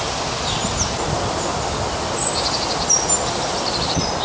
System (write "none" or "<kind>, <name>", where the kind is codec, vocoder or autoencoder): none